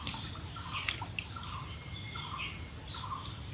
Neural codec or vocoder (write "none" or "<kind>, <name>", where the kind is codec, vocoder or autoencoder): none